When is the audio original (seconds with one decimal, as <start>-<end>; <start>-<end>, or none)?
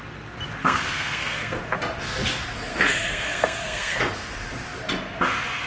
0.0-0.6; 1.6-2.7; 4.0-5.7